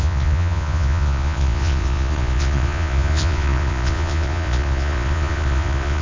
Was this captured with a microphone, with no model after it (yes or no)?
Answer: no